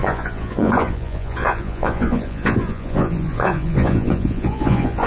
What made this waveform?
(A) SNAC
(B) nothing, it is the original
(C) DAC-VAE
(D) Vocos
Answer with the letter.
D